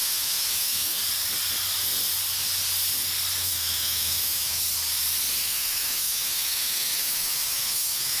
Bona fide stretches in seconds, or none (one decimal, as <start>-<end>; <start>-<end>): 1.0-3.4; 4.6-5.4